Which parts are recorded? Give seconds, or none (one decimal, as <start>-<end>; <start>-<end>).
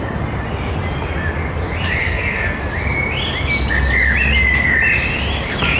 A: 0.0-2.0; 2.6-5.8